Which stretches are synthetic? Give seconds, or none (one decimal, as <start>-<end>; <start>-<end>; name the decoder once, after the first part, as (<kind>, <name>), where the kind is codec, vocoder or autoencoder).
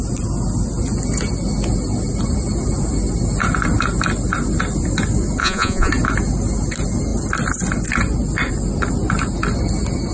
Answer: 5.4-5.9 (vocoder, Vocos)